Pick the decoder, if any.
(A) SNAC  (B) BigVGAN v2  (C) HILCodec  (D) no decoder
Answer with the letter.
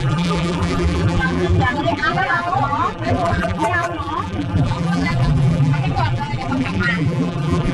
B